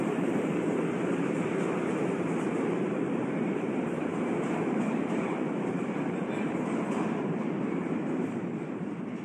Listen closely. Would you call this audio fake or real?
fake